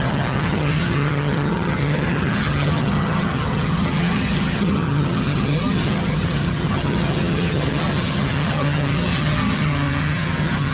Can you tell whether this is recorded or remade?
remade